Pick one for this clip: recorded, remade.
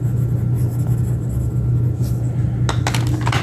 recorded